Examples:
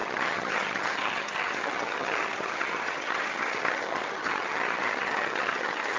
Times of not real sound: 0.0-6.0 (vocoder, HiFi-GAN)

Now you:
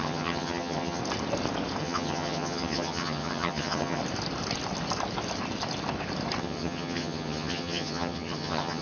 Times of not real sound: 0.0-1.0 (vocoder, HiFi-GAN); 1.8-4.0; 6.4-8.8